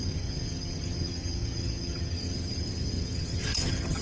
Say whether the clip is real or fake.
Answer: fake